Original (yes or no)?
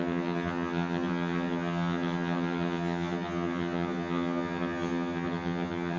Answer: no